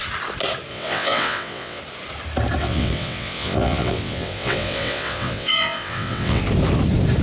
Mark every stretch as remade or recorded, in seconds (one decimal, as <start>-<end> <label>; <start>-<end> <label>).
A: 0.0-0.7 recorded; 0.7-1.8 remade; 1.8-2.6 recorded; 2.6-6.4 remade; 6.4-7.2 recorded